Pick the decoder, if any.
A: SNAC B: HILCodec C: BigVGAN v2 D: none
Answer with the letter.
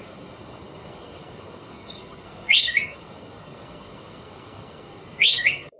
A